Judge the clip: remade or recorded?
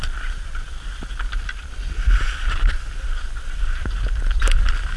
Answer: recorded